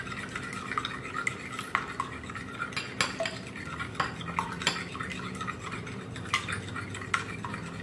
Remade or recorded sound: recorded